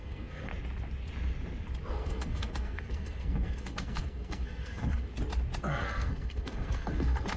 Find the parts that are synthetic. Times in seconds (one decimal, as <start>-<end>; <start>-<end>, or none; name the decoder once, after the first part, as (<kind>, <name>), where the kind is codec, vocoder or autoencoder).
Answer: 0.0-0.5 (codec, SNAC); 1.9-5.1; 5.6-7.4